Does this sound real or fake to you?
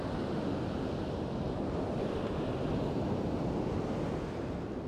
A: real